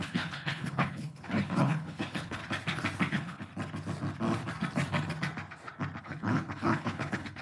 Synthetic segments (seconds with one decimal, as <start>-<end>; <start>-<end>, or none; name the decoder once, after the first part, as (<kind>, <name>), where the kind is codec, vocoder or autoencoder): 0.0-2.4 (codec, HILCodec); 3.1-3.5; 6.0-7.4